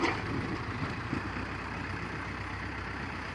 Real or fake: fake